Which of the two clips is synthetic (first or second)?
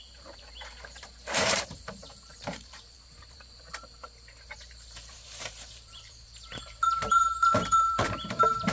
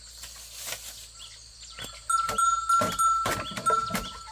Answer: first